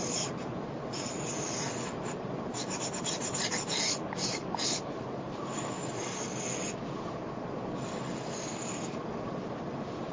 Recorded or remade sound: recorded